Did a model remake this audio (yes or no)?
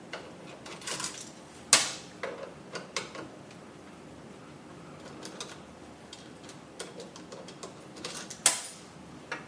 no